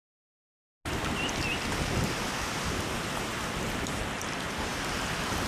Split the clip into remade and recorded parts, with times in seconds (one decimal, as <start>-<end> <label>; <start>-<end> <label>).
0.0-5.5 recorded